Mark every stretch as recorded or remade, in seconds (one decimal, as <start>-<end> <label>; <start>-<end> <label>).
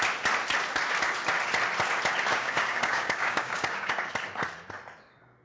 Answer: 0.0-2.3 recorded; 2.3-3.9 remade; 3.9-5.4 recorded